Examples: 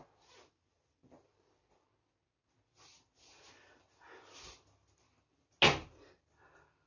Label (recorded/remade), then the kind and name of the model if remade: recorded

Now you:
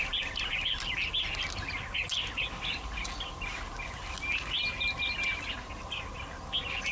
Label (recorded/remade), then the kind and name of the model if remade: recorded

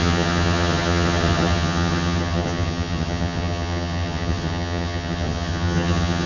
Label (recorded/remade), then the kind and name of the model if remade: remade, vocoder, HiFi-GAN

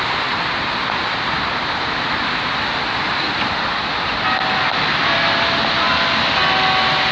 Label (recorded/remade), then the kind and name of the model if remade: recorded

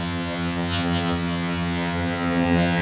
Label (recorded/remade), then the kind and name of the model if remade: remade, vocoder, HiFi-GAN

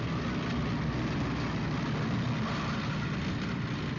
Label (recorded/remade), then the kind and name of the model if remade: recorded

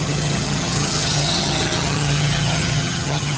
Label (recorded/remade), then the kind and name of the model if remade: remade, vocoder, HiFi-GAN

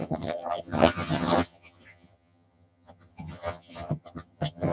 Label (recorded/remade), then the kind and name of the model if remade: remade, vocoder, HiFi-GAN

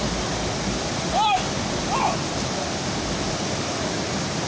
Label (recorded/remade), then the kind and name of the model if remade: recorded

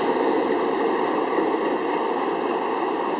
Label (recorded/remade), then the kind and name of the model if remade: recorded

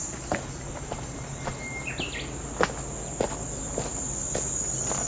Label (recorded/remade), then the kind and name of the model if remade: recorded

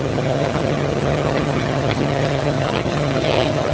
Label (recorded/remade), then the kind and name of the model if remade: remade, vocoder, HiFi-GAN